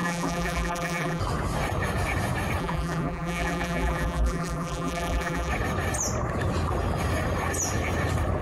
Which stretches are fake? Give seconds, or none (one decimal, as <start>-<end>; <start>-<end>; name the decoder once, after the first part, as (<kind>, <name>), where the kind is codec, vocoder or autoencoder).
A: 0.0-1.2 (vocoder, BigVGAN v2); 2.6-5.5